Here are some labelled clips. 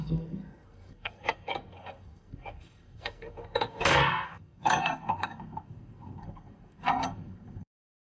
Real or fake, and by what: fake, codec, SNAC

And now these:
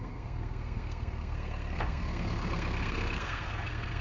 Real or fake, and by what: fake, codec, SNAC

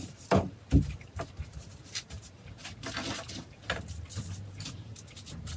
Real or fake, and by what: real